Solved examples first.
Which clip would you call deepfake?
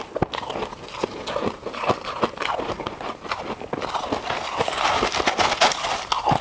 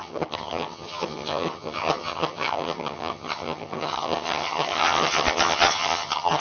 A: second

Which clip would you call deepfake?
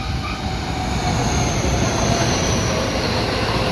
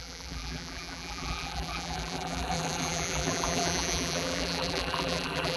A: second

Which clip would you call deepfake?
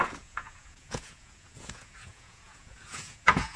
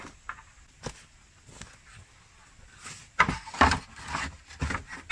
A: first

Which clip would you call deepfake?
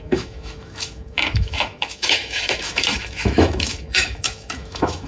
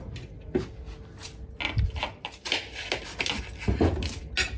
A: first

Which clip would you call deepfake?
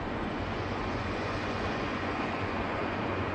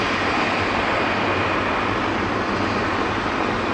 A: first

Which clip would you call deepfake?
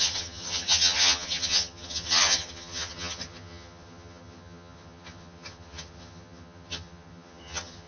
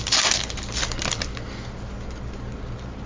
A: first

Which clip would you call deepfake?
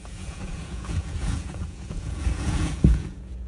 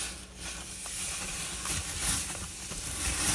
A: first